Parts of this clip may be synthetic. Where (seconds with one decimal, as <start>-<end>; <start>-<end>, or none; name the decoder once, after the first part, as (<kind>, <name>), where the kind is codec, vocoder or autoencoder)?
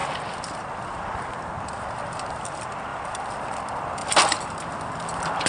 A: 0.0-2.0 (vocoder, BigVGAN v2); 2.9-3.4